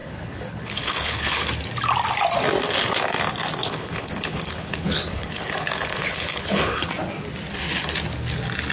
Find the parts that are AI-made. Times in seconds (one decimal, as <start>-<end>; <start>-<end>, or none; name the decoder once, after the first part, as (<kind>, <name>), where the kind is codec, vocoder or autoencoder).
0.0-1.4 (codec, HILCodec); 3.6-6.9